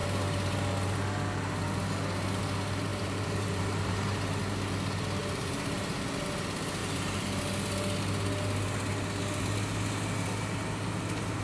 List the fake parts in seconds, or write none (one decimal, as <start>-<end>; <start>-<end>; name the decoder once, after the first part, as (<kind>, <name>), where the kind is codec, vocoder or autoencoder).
2.9-4.4 (vocoder, BigVGAN v2); 5.2-5.9; 6.8-7.4